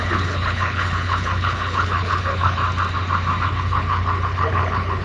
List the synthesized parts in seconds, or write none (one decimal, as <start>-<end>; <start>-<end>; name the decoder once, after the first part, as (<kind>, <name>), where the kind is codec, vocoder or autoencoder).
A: 0.0-2.6 (codec, HILCodec); 3.4-5.0